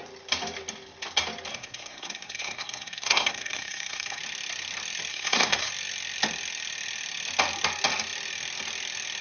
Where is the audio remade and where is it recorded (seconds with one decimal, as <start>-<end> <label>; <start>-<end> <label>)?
0.0-1.5 recorded; 1.5-4.2 remade; 4.2-5.1 recorded; 5.1-5.7 remade; 5.7-9.2 recorded